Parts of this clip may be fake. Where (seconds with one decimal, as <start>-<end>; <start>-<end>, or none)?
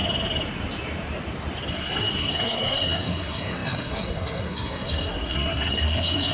1.7-6.3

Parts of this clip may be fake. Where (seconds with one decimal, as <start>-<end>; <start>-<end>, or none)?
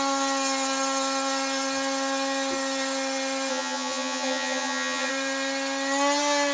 3.5-5.1